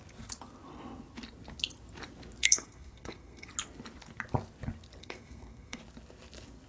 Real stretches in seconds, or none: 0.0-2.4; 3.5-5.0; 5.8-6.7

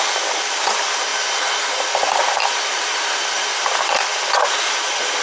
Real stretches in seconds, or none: 0.0-5.2

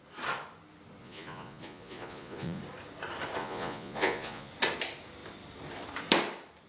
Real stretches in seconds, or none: 0.0-1.0; 2.6-3.4; 4.5-6.7

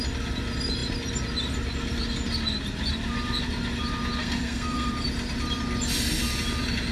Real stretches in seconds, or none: 0.0-4.2; 4.9-6.9

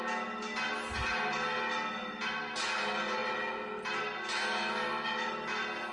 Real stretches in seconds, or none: 0.0-5.9